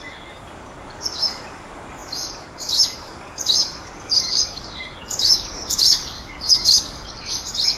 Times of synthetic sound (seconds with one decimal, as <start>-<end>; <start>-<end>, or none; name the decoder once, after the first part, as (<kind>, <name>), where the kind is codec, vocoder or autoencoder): 0.0-7.8 (codec, DAC)